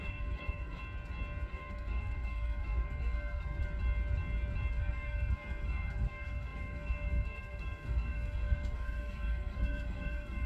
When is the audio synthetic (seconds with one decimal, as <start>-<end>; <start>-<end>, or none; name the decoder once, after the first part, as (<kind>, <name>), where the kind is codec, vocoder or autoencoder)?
0.0-0.8 (codec, SNAC); 1.5-3.6; 4.7-10.5